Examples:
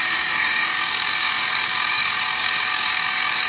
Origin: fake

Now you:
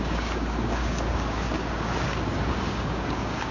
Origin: fake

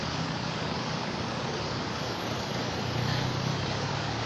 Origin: fake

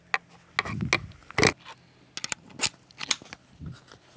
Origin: real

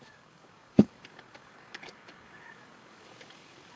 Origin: fake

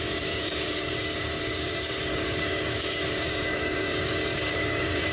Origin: fake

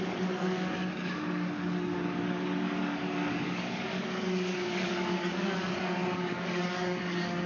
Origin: fake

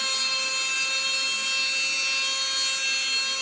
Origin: real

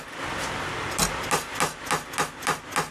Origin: real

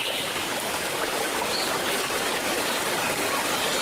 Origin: fake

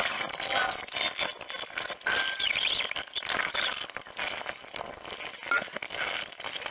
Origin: real